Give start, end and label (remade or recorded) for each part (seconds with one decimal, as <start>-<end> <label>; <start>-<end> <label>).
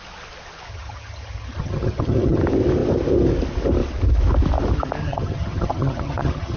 0.0-0.7 recorded; 0.7-2.4 remade; 2.4-5.0 recorded; 5.0-6.6 remade